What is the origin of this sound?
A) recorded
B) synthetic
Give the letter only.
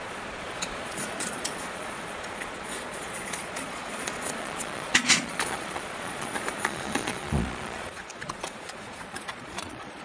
B